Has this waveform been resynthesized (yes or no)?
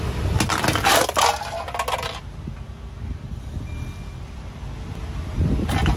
no